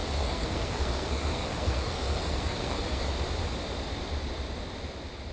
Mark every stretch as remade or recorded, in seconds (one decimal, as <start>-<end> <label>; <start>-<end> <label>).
0.0-3.1 remade; 3.1-5.3 recorded